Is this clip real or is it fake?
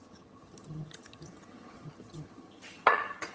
fake